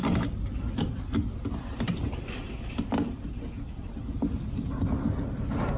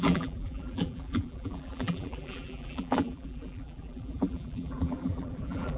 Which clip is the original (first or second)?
first